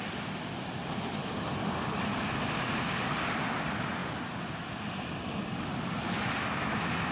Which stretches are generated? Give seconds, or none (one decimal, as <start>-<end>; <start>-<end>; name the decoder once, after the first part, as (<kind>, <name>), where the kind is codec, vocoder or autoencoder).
none